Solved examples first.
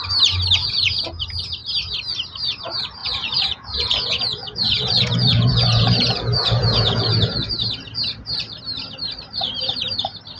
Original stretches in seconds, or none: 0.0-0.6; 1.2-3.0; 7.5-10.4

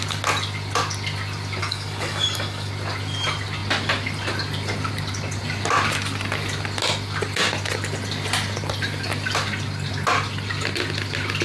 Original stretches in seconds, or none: 0.0-1.6; 2.7-11.4

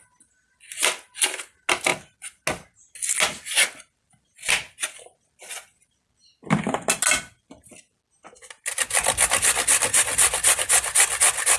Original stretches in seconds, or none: 0.0-11.6

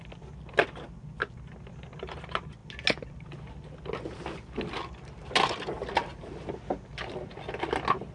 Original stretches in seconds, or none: 0.0-8.1

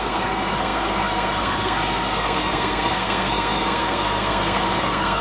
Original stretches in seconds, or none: none

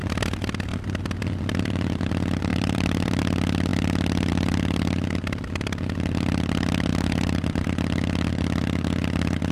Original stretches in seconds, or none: 0.0-0.7; 2.1-2.5; 3.2-9.5

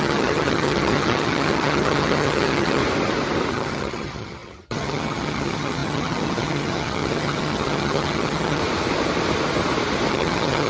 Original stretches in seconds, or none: 2.8-3.5; 8.6-10.1

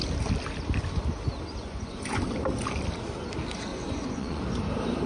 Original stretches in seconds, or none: 0.0-1.6; 2.2-3.7; 4.4-5.1